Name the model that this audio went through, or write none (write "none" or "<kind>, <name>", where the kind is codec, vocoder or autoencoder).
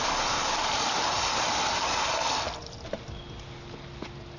none